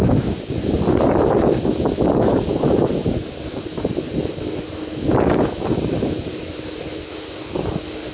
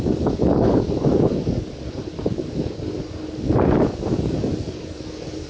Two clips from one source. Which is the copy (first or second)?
second